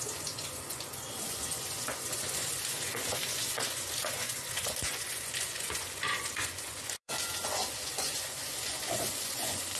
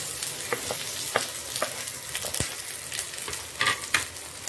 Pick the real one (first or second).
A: second